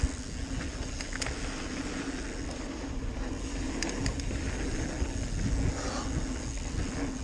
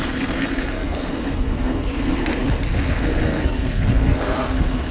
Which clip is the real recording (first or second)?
first